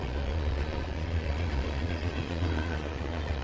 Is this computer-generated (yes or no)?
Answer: yes